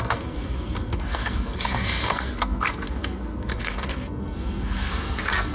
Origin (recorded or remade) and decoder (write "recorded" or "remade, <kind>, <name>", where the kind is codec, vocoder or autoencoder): remade, codec, SNAC